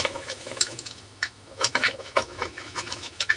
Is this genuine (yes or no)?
no